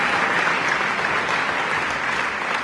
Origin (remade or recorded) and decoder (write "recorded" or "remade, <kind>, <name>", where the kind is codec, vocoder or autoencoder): recorded